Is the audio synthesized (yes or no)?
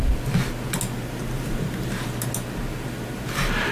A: no